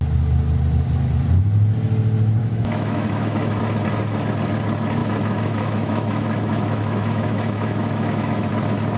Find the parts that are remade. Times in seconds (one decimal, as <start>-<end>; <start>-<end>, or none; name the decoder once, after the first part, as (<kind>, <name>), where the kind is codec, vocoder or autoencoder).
2.4-3.6 (autoencoder, DAC-VAE); 5.0-8.5